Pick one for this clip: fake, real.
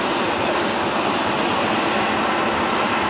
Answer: real